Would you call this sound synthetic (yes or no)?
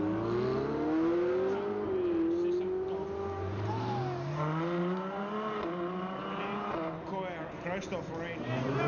no